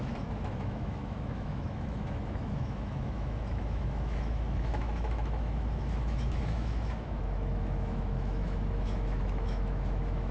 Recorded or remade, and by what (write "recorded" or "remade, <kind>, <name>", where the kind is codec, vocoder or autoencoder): remade, autoencoder, DAC-VAE